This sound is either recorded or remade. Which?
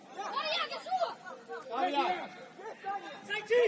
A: recorded